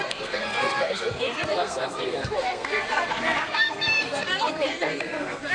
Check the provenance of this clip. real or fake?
fake